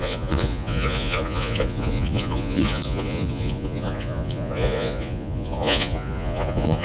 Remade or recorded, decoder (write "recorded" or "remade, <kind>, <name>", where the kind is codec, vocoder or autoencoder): remade, vocoder, Vocos